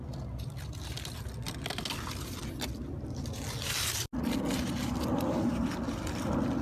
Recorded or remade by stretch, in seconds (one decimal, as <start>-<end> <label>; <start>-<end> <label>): 0.0-6.6 recorded